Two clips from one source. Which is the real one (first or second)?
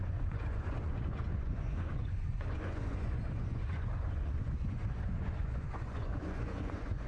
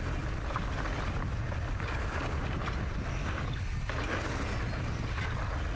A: second